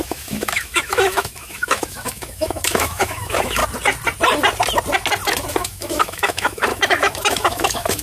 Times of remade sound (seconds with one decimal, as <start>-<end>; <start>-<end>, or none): 0.0-3.6; 5.5-8.0